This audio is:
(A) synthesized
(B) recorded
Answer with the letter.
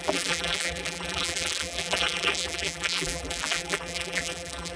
A